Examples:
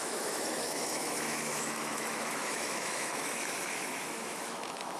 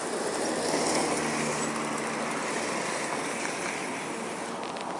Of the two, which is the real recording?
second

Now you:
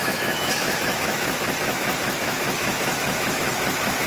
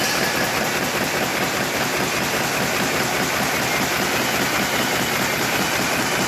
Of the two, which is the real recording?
second